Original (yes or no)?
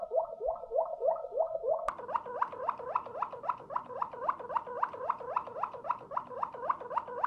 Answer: yes